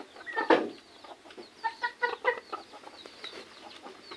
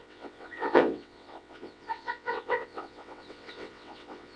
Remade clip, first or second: second